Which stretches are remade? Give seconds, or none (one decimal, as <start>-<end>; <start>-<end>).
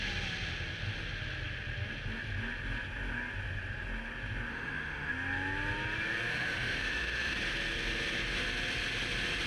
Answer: 4.5-5.1; 6.3-7.4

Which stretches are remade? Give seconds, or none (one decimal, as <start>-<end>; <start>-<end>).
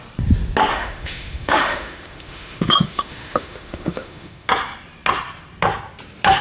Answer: 0.7-4.5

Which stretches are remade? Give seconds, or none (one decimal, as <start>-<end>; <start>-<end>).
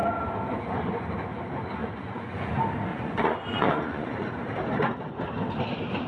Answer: 1.8-2.5; 2.9-4.3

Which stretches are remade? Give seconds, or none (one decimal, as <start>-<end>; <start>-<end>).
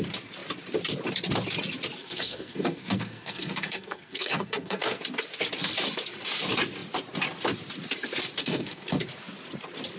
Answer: 2.0-5.0; 8.4-9.0